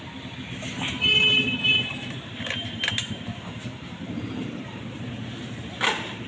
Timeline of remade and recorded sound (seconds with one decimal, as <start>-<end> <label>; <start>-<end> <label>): 0.0-1.3 recorded; 1.3-5.1 remade; 5.1-6.3 recorded